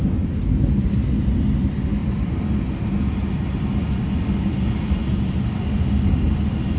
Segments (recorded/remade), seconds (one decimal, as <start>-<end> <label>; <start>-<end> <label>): 0.0-6.8 recorded